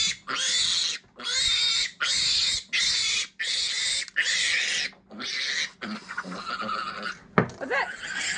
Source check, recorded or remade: recorded